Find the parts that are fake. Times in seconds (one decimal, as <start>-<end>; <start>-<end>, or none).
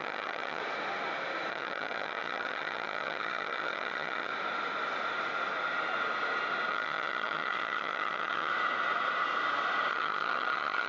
0.0-0.6; 1.5-4.3; 6.7-8.5; 9.9-10.9